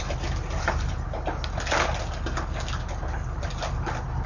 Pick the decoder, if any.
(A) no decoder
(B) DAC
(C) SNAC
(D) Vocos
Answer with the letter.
A